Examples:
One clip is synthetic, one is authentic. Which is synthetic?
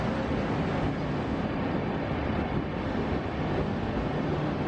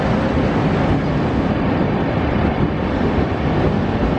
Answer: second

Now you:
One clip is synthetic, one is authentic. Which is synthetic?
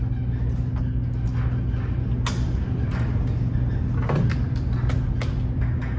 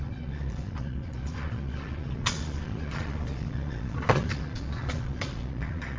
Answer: second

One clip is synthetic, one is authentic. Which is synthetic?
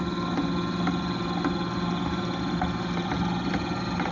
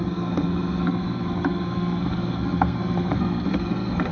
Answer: second